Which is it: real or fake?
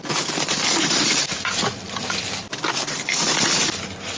real